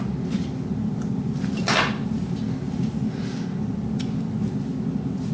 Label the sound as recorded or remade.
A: recorded